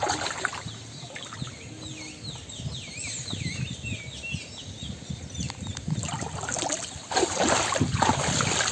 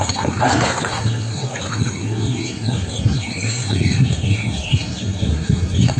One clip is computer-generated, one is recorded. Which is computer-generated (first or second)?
second